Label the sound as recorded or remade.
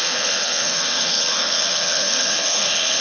remade